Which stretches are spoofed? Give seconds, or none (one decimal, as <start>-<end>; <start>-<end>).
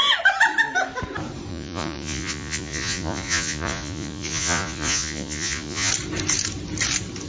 1.5-5.9